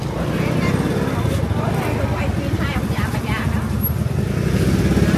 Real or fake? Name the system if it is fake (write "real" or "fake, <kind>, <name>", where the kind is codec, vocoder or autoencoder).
real